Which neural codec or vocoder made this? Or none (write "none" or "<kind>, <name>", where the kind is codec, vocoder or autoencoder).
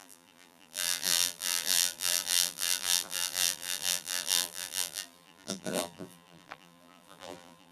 vocoder, BigVGAN v2